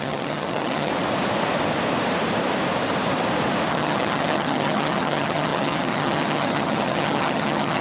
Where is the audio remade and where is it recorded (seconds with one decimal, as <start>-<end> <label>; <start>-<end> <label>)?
0.0-0.9 remade; 0.9-3.7 recorded; 3.7-7.8 remade

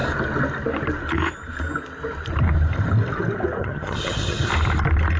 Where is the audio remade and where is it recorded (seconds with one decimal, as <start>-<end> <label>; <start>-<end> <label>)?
0.0-3.6 recorded; 3.6-4.5 remade; 4.5-5.2 recorded

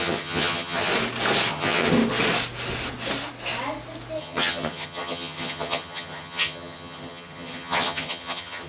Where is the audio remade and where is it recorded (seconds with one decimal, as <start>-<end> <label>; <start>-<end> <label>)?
0.0-0.9 remade; 0.9-1.5 recorded; 1.5-1.9 remade; 1.9-4.2 recorded; 4.2-8.7 remade

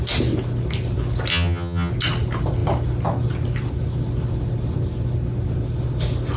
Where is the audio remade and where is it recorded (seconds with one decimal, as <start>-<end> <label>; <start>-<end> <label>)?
0.0-1.3 recorded; 1.3-1.9 remade; 1.9-6.4 recorded

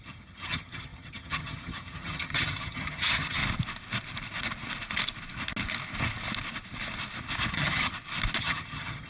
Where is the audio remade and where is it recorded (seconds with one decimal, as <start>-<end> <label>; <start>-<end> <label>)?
0.0-3.4 remade; 3.4-7.5 recorded; 7.5-7.9 remade; 7.9-8.4 recorded; 8.4-9.1 remade

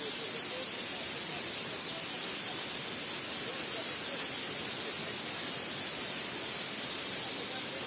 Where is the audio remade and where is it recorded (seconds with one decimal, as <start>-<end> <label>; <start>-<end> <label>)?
0.0-7.9 recorded